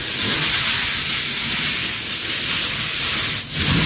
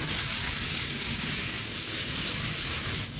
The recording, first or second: first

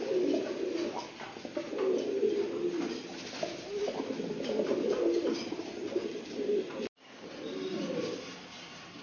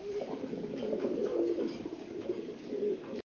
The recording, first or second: first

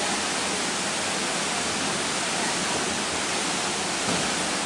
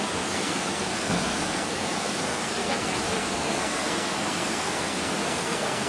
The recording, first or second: first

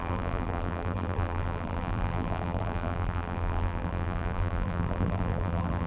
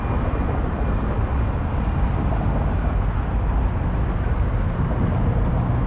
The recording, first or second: second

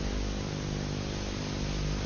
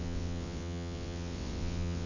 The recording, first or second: first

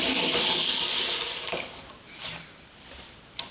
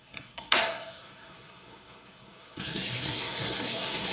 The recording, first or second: first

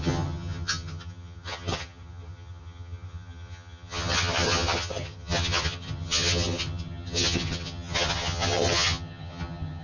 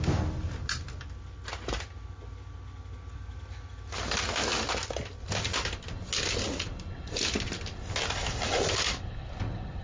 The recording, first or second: second